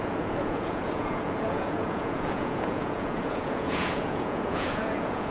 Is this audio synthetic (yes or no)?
yes